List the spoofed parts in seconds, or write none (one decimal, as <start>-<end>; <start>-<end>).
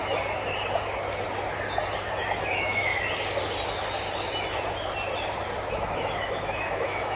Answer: 2.5-2.9; 5.7-7.2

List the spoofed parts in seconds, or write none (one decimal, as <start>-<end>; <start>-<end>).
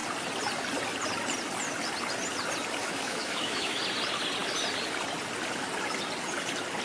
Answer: 2.8-3.8